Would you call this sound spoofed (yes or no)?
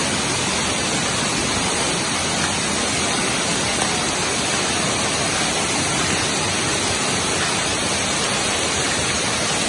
no